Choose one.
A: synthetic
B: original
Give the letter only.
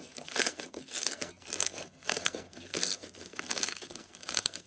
A